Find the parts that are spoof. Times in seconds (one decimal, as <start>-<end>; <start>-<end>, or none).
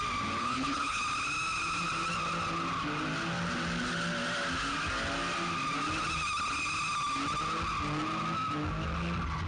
0.4-1.0